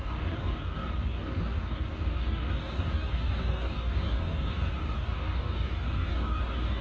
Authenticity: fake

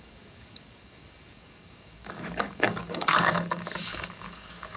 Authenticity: fake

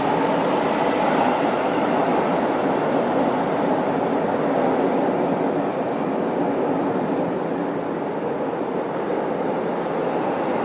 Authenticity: real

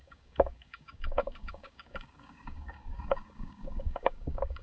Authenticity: fake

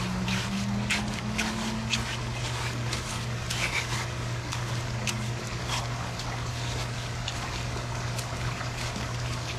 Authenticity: fake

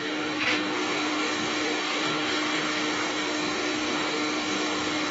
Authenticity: fake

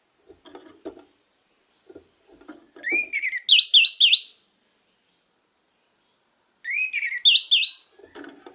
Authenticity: real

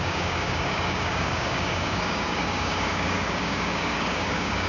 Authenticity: fake